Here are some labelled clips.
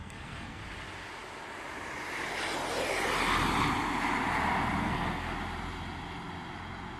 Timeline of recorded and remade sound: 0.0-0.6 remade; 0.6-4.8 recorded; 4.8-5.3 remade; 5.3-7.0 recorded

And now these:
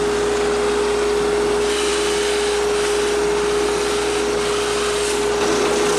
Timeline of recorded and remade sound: 0.0-6.0 recorded

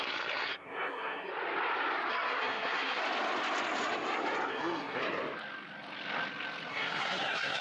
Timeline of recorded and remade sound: 0.0-1.3 remade; 1.3-2.1 recorded; 2.1-3.0 remade; 3.0-4.5 recorded; 4.5-5.0 remade; 5.0-6.7 recorded; 6.7-7.6 remade

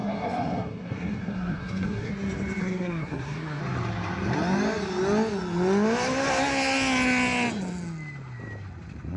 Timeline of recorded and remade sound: 0.0-2.1 remade; 2.1-2.6 recorded; 2.6-3.6 remade; 3.6-9.2 recorded

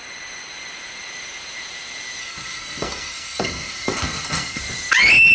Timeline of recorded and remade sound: 0.0-2.2 recorded; 2.2-4.6 remade; 4.6-5.3 recorded

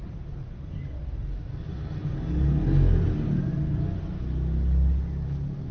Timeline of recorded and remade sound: 0.0-5.7 recorded

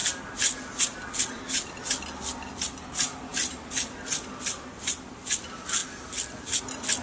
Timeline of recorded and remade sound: 0.0-7.0 recorded